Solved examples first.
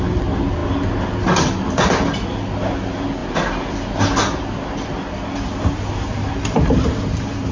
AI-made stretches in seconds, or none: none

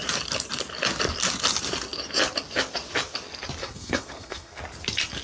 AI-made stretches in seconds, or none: 3.6-4.6 (codec, SNAC)